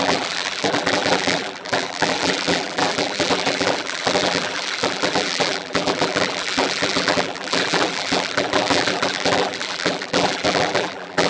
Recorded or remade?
remade